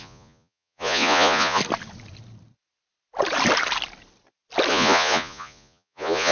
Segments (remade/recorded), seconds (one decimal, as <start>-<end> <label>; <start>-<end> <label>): 0.0-1.6 remade; 1.6-4.7 recorded; 4.7-6.3 remade